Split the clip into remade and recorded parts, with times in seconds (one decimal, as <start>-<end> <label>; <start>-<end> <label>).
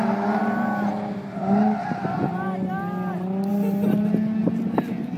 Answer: 0.0-5.2 recorded